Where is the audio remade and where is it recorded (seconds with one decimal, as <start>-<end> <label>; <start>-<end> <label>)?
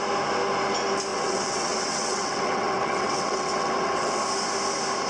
0.0-1.1 recorded; 1.1-4.2 remade; 4.2-5.1 recorded